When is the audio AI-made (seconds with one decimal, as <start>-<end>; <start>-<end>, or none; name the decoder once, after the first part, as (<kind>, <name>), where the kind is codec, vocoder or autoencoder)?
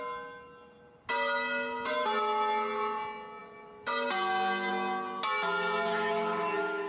5.9-6.9 (autoencoder, DAC-VAE)